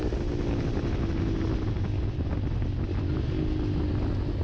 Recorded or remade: recorded